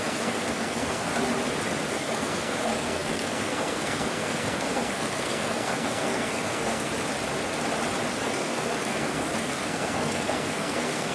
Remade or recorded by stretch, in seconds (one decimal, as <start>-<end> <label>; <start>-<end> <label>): 0.0-1.1 remade; 1.1-1.9 recorded; 1.9-6.9 remade; 6.9-8.2 recorded; 8.2-11.1 remade